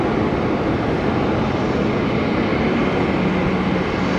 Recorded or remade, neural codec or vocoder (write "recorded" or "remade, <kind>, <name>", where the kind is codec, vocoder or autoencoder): recorded